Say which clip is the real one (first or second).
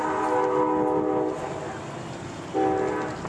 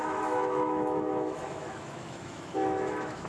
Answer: first